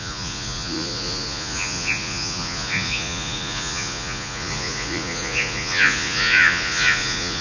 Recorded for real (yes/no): no